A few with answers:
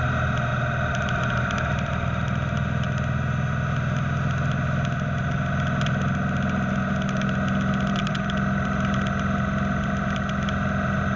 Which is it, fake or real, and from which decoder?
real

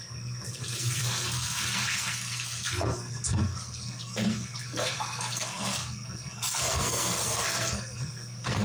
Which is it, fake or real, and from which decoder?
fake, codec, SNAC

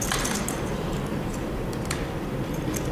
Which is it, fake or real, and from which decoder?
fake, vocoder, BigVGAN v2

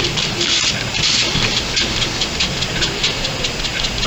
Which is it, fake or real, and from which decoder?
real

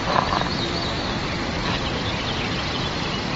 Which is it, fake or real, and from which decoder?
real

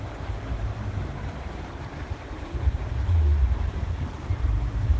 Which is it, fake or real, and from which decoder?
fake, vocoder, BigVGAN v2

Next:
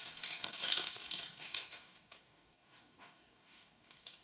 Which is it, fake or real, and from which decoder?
fake, codec, DAC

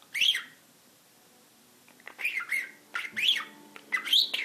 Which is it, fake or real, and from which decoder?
real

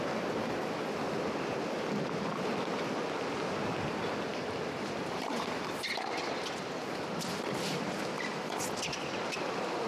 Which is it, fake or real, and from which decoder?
real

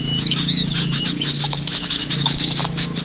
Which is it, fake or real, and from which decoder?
fake, codec, DAC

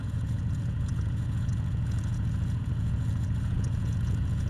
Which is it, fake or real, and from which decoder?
fake, vocoder, Vocos